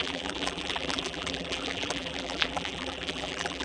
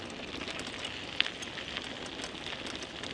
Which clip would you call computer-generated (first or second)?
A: first